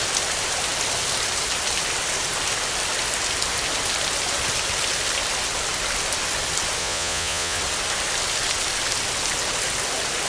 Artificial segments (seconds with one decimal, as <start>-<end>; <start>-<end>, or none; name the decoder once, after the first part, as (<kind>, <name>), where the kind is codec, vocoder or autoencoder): 6.8-7.6 (vocoder, Vocos)

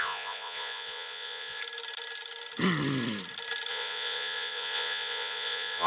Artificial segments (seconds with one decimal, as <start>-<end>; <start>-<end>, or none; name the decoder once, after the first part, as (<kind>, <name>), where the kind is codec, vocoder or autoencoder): 0.0-1.6 (vocoder, Vocos); 3.7-5.9

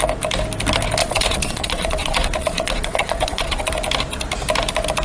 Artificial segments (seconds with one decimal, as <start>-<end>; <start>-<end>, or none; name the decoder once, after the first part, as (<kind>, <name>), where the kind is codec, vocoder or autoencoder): 1.0-3.7 (vocoder, Vocos)

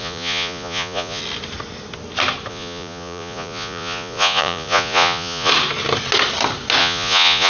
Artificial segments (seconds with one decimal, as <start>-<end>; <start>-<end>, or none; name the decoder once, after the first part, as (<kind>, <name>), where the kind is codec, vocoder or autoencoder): 0.0-1.2 (vocoder, Vocos); 2.5-5.5; 6.8-7.5

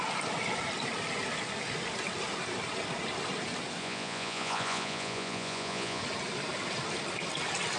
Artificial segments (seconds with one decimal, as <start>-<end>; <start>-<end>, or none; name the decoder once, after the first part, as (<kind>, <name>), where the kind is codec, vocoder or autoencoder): 3.8-6.0 (vocoder, Vocos)

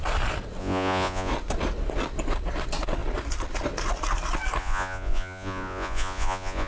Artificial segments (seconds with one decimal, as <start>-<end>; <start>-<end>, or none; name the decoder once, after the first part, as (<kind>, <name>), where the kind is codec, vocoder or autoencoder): 0.6-1.3 (vocoder, Vocos); 4.6-6.7

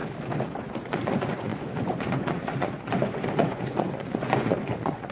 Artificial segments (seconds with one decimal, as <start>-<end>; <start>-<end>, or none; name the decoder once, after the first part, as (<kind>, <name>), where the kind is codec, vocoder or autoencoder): 0.6-5.1 (vocoder, Vocos)

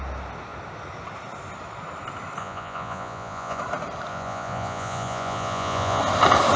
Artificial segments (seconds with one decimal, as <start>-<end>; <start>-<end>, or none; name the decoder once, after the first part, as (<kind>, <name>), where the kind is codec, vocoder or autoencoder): 2.4-3.6 (vocoder, Vocos); 4.1-6.0